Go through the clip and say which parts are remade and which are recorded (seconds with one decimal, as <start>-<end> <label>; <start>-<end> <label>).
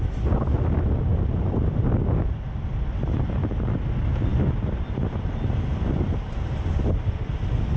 0.0-7.8 recorded